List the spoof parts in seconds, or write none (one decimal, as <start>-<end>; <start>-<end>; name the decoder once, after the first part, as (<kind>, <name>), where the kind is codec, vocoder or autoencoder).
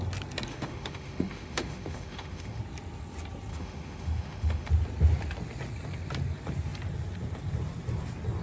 0.5-2.6 (autoencoder, DAC-VAE); 3.5-4.7